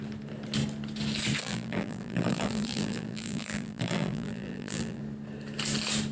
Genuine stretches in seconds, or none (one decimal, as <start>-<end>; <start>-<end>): 0.0-1.4; 5.0-6.1